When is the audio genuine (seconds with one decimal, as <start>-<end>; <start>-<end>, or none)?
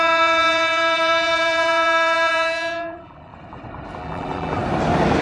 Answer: 3.3-4.0; 4.6-5.2